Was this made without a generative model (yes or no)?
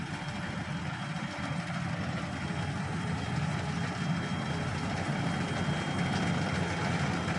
yes